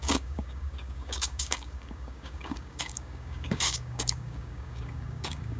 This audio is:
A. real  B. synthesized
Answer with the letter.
B